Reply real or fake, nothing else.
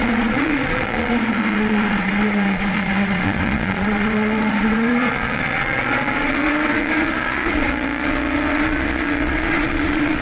fake